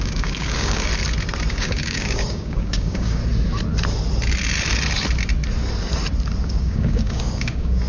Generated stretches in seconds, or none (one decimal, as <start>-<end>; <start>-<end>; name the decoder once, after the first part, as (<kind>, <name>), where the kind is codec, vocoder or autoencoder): 0.0-0.9 (codec, DAC); 1.5-3.2; 6.4-7.9